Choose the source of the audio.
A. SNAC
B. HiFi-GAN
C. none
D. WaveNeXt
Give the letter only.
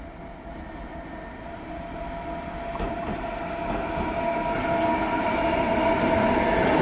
C